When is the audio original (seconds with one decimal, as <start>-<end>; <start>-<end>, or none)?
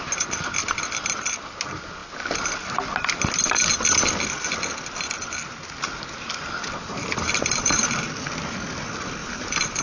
0.0-6.8; 7.8-9.2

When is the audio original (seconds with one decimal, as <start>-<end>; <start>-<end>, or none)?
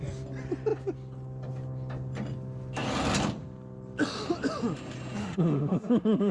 0.0-5.2